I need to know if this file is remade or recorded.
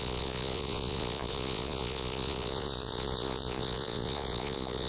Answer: remade